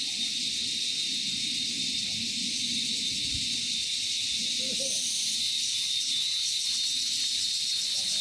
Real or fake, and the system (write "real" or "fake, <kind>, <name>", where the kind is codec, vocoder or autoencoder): real